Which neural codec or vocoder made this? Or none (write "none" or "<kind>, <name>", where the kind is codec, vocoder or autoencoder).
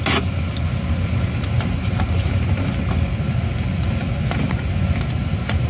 none